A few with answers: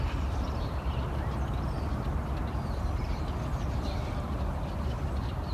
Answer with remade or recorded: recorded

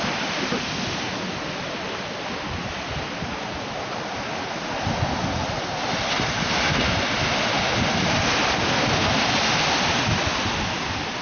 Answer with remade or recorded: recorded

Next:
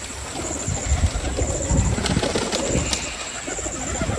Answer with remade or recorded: recorded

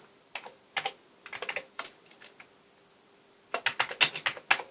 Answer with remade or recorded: recorded